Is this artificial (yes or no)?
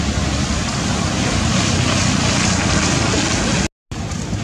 no